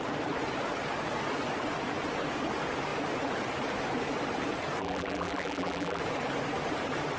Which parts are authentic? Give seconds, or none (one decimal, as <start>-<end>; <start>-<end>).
0.0-4.8; 6.0-7.2